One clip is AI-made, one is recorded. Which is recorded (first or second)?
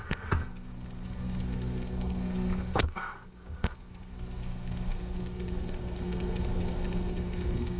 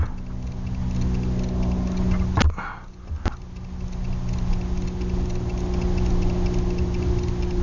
second